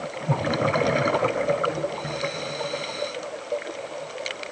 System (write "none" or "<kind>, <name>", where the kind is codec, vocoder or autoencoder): none